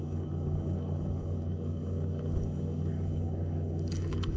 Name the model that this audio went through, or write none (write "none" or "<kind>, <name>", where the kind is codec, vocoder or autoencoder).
codec, DAC